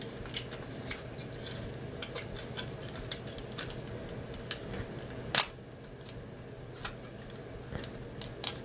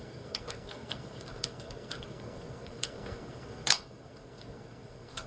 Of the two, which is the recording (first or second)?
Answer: first